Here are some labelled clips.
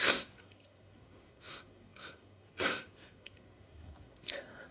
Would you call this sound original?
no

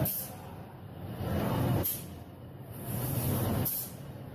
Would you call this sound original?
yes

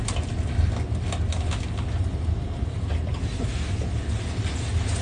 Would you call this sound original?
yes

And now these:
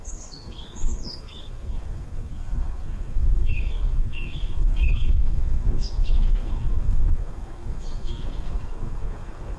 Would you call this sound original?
no